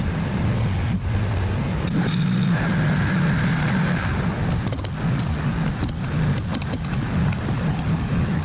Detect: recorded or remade recorded